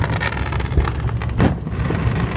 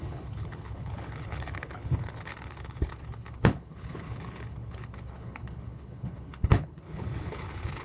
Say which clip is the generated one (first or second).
second